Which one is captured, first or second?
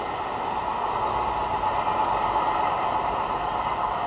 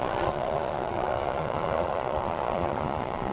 first